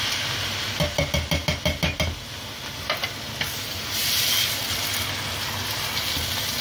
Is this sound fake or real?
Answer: real